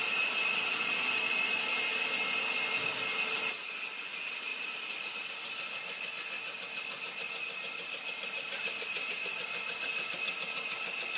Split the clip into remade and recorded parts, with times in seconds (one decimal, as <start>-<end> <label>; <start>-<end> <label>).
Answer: 0.0-11.2 recorded